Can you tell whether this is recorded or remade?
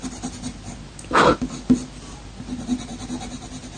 recorded